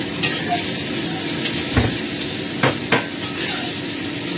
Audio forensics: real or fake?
real